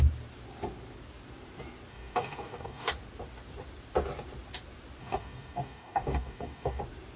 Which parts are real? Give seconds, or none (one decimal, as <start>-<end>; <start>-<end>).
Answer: 0.0-1.9; 2.9-5.0; 6.8-7.2

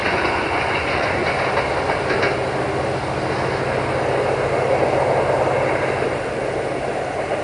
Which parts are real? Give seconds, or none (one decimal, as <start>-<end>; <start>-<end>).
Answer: 1.4-7.4

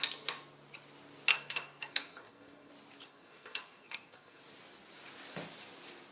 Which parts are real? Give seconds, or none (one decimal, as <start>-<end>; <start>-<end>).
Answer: 0.0-1.3; 2.7-3.1; 4.4-6.1

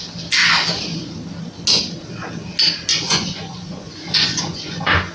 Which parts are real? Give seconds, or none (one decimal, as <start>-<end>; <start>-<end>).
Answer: 0.0-2.9